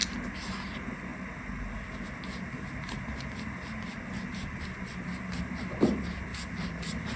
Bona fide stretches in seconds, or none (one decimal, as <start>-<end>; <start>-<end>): 0.0-6.3